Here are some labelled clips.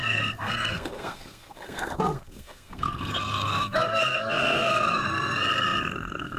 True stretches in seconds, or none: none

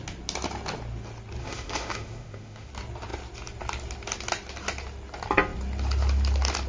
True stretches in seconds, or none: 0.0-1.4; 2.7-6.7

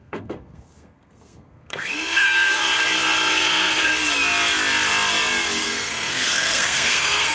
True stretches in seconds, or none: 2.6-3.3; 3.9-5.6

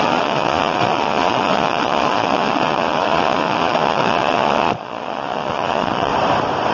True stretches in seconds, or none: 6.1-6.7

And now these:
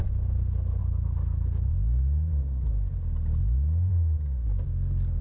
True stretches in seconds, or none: 0.0-5.2

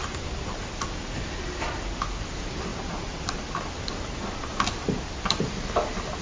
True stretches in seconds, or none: 0.0-6.2